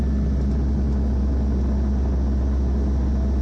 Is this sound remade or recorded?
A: recorded